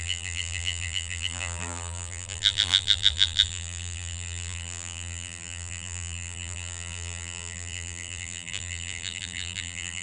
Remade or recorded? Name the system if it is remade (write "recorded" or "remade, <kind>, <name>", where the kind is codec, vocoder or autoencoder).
remade, vocoder, BigVGAN v2